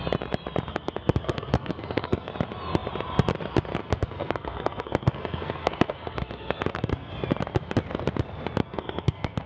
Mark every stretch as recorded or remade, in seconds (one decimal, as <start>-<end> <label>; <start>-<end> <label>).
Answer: 0.0-0.7 recorded; 0.7-2.3 remade; 2.3-3.8 recorded; 3.8-7.1 remade; 7.1-8.6 recorded; 8.6-9.5 remade